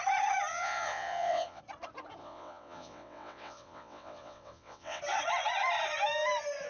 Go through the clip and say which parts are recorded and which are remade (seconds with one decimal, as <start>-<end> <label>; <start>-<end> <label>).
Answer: 0.0-0.5 recorded; 0.5-1.6 remade; 1.6-2.2 recorded; 2.2-5.0 remade; 5.0-6.7 recorded